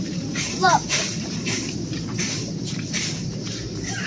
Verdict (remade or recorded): remade